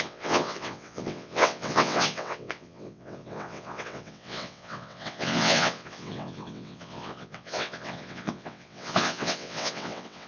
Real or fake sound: fake